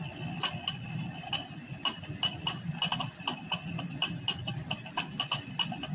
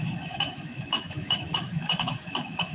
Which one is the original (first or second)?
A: first